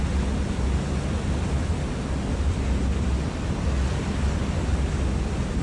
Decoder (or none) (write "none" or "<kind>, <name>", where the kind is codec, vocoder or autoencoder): none